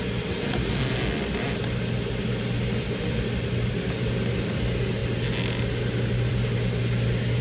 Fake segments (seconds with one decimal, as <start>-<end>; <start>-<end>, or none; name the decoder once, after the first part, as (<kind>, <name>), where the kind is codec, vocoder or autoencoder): none